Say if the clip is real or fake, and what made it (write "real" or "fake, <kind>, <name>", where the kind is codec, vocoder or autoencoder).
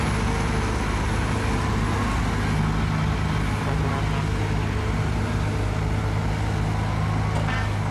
real